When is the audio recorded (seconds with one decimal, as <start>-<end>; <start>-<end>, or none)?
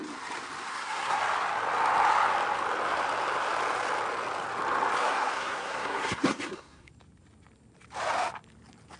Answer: 0.0-0.7; 1.2-5.0; 6.9-9.0